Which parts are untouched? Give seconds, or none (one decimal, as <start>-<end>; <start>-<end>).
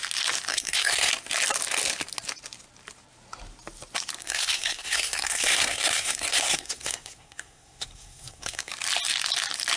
0.0-0.5; 1.1-4.2; 8.7-9.8